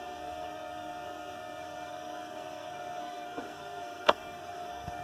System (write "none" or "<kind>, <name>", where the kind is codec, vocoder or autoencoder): codec, SNAC